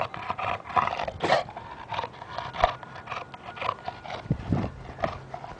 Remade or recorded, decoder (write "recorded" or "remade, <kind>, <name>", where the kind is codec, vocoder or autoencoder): recorded